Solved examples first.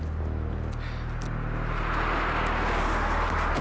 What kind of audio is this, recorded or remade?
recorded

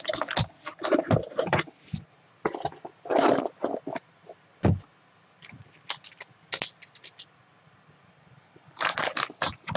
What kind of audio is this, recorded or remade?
recorded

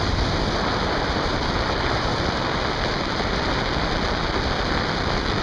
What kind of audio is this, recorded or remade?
recorded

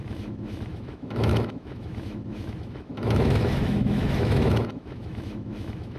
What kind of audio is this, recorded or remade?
remade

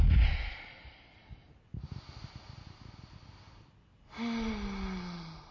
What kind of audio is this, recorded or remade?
recorded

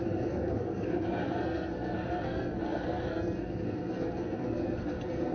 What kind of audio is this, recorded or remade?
remade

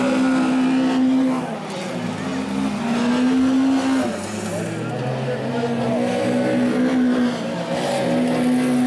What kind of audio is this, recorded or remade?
recorded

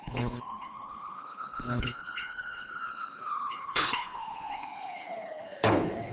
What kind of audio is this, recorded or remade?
remade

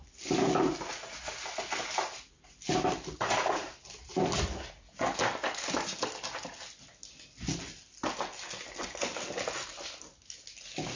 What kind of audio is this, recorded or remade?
recorded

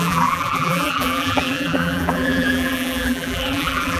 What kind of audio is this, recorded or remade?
remade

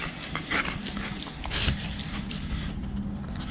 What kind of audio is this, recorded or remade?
recorded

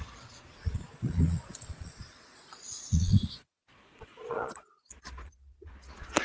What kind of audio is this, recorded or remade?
remade